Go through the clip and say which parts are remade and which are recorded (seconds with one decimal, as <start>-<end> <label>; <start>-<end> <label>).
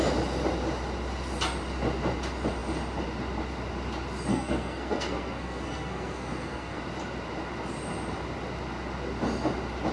0.0-4.3 recorded; 4.3-6.8 remade; 6.8-9.9 recorded